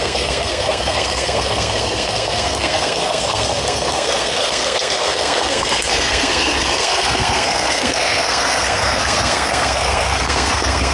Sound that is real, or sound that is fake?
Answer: fake